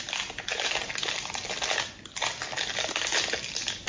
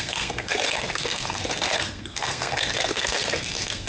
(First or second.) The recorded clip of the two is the first